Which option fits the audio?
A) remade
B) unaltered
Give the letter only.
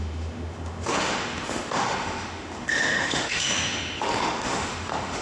A